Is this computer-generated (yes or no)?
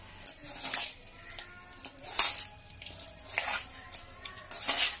no